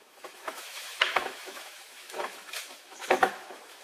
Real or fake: fake